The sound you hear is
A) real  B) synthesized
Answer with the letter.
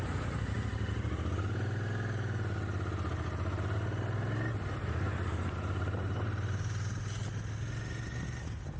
A